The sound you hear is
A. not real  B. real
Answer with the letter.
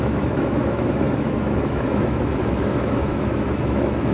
A